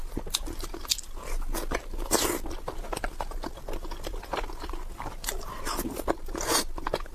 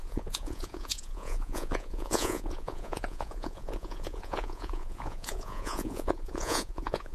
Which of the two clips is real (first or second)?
first